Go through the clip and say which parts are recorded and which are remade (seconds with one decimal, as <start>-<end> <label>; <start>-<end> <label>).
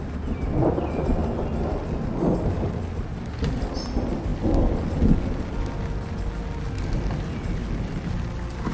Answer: 0.0-8.7 recorded